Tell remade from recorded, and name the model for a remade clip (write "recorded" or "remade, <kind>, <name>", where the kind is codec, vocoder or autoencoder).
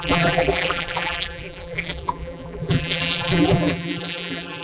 remade, vocoder, BigVGAN v2